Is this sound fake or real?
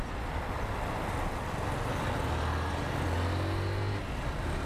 real